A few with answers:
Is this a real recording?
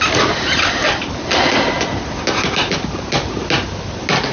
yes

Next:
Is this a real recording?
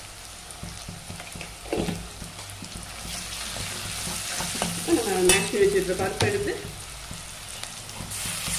yes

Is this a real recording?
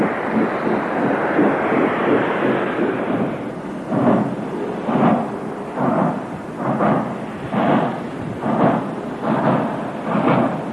yes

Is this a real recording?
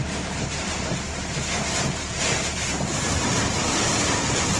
no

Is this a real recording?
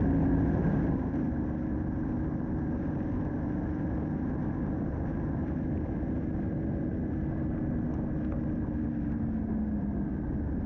yes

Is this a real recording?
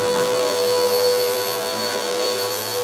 no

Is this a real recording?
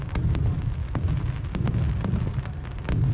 yes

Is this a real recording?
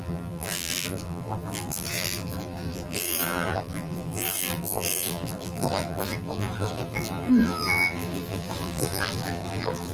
no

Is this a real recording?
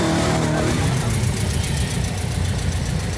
no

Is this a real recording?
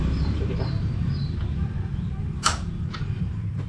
no